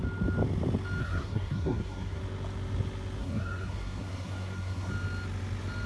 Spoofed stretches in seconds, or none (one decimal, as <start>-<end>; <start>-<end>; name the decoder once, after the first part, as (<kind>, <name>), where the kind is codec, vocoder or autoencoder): 1.0-2.2 (codec, SNAC); 3.2-4.9